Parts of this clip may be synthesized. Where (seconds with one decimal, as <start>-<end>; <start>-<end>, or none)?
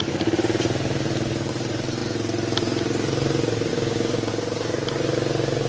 3.7-4.3